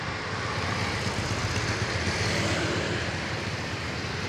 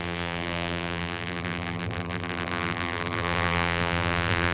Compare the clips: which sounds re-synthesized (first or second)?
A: second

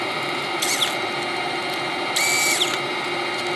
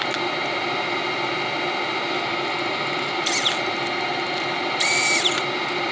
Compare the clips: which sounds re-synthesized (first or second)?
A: second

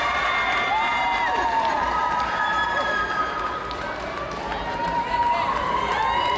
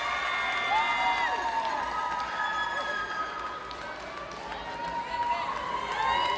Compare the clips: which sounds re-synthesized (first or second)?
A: first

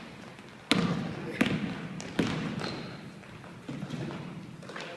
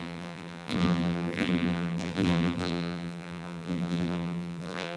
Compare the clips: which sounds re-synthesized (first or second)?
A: second